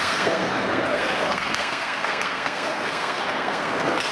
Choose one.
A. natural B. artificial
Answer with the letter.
B